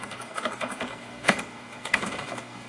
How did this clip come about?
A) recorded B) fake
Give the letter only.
B